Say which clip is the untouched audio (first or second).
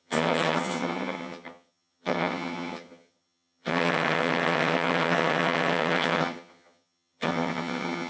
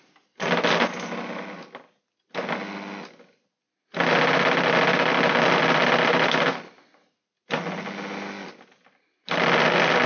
second